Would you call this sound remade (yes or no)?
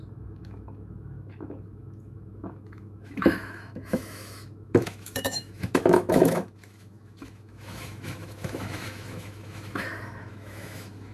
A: yes